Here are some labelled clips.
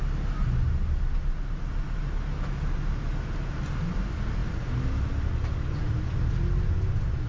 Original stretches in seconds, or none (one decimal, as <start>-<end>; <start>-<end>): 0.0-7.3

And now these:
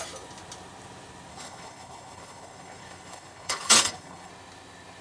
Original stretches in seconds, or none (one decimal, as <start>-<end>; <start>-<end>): 0.0-1.3; 4.3-5.0

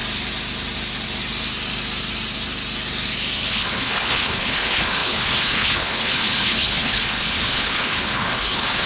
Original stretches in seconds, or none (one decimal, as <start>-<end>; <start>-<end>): 0.0-3.5

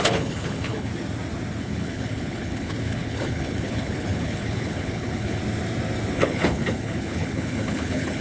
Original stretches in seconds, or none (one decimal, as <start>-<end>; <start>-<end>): 0.9-1.6; 5.4-6.1